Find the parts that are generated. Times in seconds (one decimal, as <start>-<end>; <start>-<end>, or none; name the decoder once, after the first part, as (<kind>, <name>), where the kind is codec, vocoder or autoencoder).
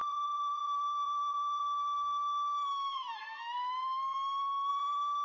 0.0-1.6 (vocoder, BigVGAN v2); 4.7-5.2